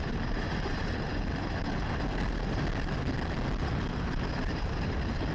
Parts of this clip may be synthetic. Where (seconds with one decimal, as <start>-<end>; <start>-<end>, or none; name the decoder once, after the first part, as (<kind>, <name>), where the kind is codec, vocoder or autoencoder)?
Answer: 0.0-5.3 (vocoder, BigVGAN v2)